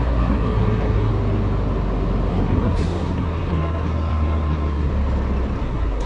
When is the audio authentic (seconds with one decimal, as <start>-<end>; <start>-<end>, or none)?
1.1-2.3; 4.9-5.6